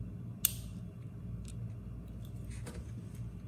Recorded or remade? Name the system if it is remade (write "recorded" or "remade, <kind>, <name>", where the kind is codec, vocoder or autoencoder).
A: recorded